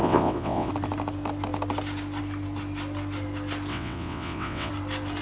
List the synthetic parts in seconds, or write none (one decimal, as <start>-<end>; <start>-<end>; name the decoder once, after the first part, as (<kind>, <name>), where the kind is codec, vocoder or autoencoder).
0.0-0.7 (vocoder, WaveNeXt); 3.7-4.7